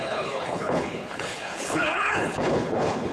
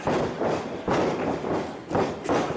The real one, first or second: second